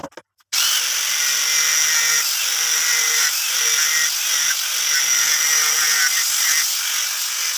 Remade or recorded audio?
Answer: recorded